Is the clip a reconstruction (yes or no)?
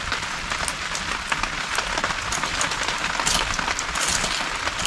no